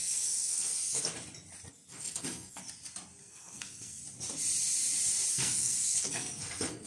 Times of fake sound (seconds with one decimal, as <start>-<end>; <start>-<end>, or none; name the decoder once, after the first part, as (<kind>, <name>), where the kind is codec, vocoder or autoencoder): 0.0-1.1 (codec, SNAC); 1.9-2.6; 3.2-4.0; 5.3-6.9